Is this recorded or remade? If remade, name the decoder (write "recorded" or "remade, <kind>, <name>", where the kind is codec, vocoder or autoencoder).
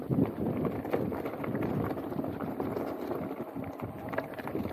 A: recorded